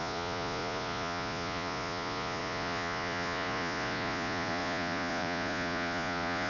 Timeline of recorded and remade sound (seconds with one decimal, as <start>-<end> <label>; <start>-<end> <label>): 0.0-6.5 remade